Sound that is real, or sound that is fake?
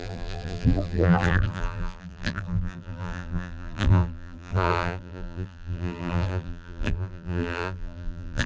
fake